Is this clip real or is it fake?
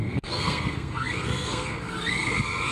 fake